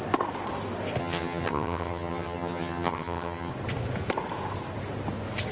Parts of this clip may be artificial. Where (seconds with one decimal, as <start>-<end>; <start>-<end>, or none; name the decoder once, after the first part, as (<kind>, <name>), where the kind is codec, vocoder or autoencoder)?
1.0-3.5 (vocoder, HiFi-GAN)